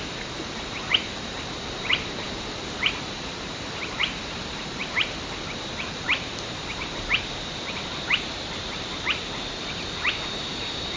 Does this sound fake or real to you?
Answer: fake